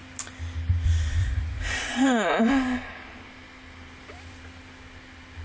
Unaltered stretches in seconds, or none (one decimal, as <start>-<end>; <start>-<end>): 0.0-1.2; 2.4-5.4